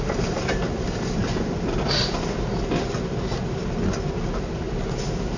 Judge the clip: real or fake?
real